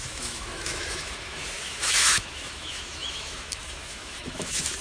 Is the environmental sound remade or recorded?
remade